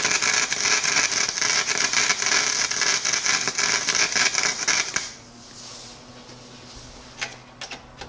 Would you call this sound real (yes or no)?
yes